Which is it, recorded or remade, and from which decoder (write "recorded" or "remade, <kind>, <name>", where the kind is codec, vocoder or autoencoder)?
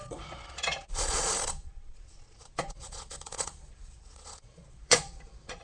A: remade, vocoder, Vocos